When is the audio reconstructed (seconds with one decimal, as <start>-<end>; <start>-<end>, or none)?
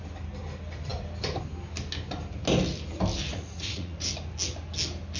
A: 3.3-4.1